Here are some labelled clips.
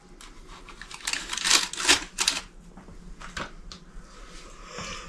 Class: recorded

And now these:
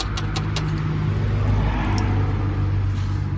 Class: recorded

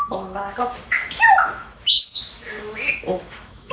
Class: remade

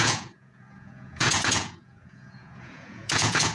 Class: remade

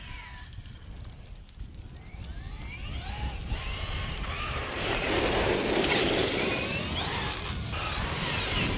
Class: recorded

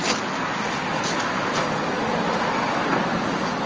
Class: recorded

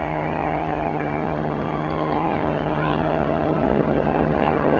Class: remade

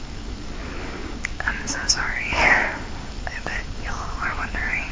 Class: remade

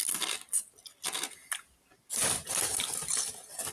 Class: recorded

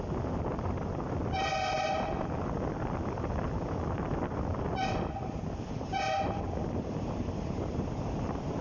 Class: recorded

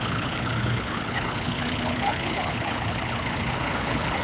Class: remade